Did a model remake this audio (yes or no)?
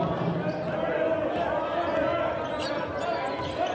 no